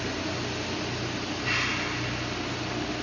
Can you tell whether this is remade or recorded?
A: recorded